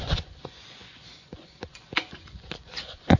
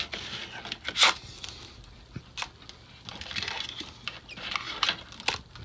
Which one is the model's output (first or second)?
first